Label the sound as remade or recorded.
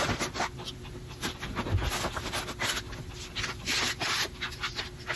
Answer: recorded